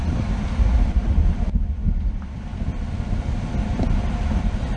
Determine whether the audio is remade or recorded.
recorded